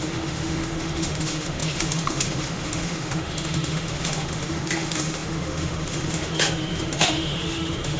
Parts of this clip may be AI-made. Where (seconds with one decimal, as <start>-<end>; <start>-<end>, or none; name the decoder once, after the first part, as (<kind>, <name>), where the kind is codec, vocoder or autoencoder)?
0.0-8.0 (autoencoder, DAC-VAE)